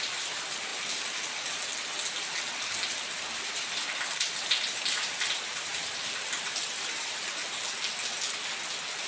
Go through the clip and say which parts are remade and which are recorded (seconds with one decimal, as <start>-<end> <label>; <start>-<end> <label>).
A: 0.0-0.7 remade; 0.7-3.5 recorded; 3.5-7.4 remade; 7.4-9.1 recorded